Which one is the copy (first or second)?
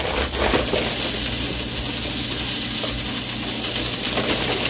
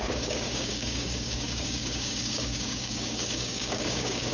second